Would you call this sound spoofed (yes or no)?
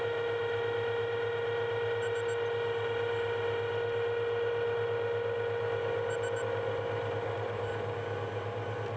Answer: no